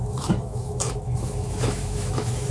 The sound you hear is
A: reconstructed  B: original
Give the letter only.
A